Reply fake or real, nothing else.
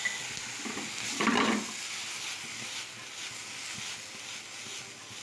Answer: real